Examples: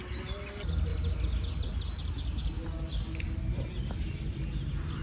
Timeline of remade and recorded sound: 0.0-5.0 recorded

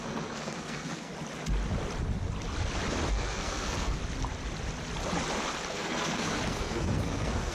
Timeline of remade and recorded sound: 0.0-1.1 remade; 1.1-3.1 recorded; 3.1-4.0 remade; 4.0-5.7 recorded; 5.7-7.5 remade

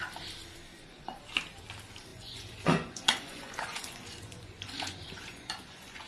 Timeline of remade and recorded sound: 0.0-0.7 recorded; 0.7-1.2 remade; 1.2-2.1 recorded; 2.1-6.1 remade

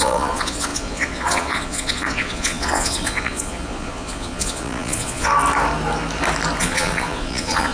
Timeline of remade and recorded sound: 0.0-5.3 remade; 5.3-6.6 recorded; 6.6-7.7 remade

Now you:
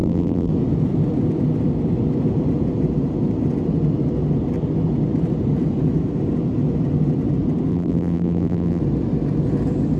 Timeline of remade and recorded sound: 0.0-0.5 remade; 0.5-7.7 recorded; 7.7-8.8 remade; 8.8-10.0 recorded

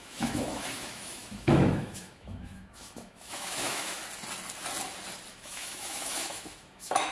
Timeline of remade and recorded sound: 0.0-4.0 remade; 4.0-5.3 recorded; 5.3-7.1 remade

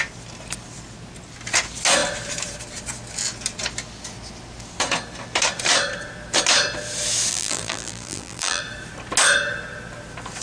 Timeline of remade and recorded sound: 0.0-7.3 recorded; 7.3-8.6 remade; 8.6-10.4 recorded